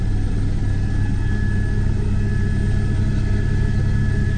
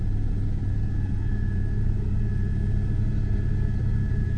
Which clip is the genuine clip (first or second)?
first